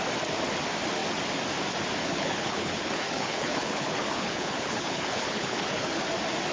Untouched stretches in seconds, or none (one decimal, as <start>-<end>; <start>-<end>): 0.0-2.0; 5.9-6.5